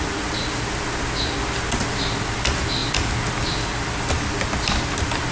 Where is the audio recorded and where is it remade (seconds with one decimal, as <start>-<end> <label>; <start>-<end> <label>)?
0.0-5.3 recorded